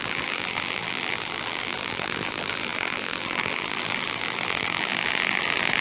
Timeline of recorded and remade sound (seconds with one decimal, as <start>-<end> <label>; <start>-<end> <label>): 0.0-5.8 remade